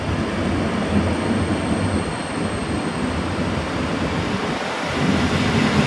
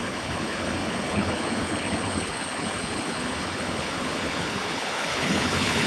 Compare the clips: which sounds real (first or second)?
first